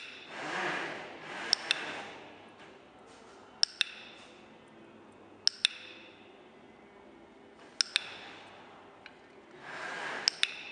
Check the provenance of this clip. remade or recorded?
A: recorded